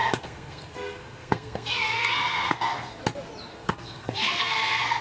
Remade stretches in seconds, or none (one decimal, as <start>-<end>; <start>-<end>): 0.0-3.0; 3.5-5.0